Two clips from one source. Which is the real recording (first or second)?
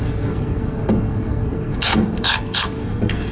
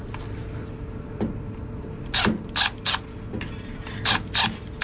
second